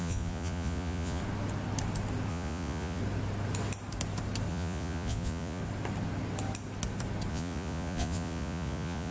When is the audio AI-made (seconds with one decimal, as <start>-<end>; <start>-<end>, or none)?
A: 0.0-1.2; 2.3-3.0; 4.5-5.6; 7.3-9.1